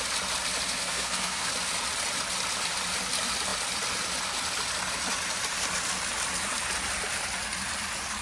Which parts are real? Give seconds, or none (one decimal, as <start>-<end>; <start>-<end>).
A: 0.0-0.8; 1.5-8.2